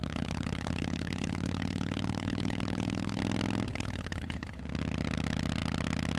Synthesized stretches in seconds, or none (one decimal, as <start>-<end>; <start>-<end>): 0.0-3.2; 3.7-4.6